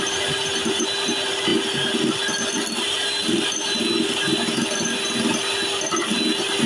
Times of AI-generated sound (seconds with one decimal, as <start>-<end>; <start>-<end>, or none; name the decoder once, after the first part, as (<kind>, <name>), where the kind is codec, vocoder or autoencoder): none